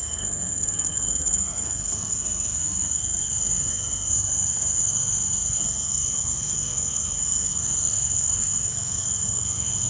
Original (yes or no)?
no